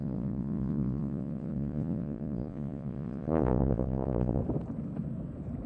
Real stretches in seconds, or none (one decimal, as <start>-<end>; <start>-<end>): 4.4-5.7